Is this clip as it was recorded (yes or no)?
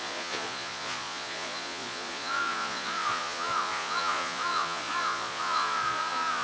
no